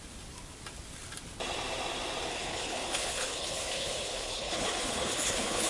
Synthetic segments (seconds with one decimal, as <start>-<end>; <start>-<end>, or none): 2.3-5.7